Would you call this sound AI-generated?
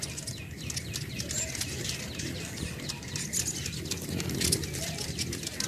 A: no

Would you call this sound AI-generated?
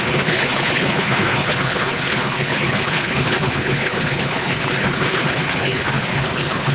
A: yes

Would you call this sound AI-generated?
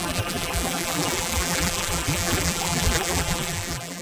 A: yes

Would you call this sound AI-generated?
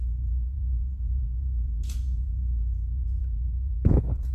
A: yes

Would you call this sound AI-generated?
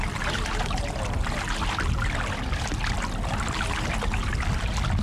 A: no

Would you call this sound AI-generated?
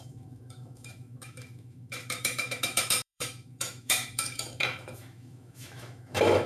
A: yes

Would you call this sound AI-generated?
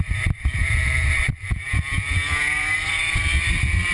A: yes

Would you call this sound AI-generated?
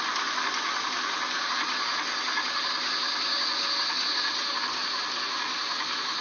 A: no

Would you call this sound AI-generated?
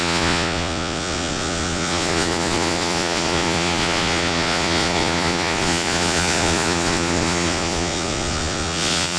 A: yes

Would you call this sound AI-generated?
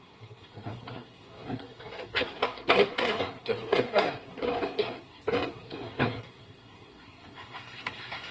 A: yes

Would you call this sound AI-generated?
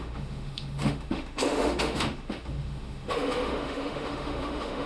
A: yes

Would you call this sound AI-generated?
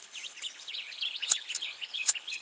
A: yes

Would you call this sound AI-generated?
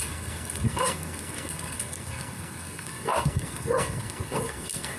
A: yes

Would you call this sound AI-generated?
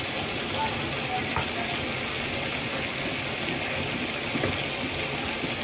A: no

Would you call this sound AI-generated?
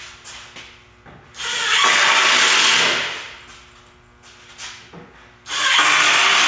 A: no